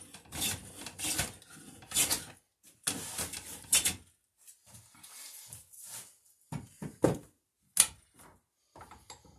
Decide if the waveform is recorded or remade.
recorded